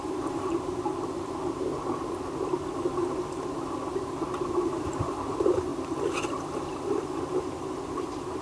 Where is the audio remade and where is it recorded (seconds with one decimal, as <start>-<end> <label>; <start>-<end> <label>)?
0.0-0.9 remade; 0.9-4.5 recorded; 4.5-5.7 remade; 5.7-8.4 recorded